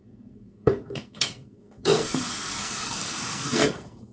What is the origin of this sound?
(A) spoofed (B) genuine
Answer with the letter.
A